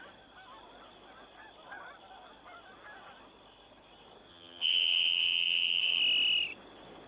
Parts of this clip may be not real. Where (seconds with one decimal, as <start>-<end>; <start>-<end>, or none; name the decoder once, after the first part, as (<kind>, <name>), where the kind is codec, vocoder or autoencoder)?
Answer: 4.3-6.0 (vocoder, HiFi-GAN)